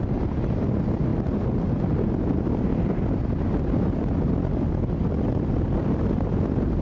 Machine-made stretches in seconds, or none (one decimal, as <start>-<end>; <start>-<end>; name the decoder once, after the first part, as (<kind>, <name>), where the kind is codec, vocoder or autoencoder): none